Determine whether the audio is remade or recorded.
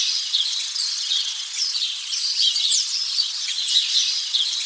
remade